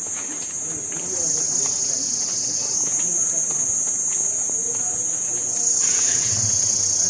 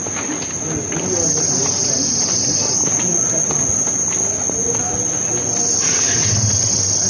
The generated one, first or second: first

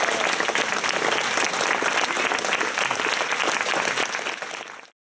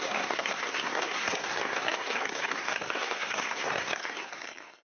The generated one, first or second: second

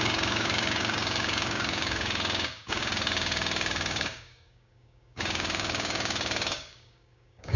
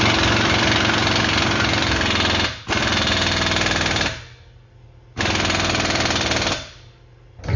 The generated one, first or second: first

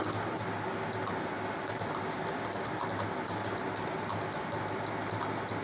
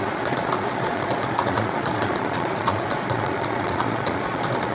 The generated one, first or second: second